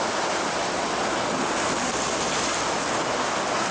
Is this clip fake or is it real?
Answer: real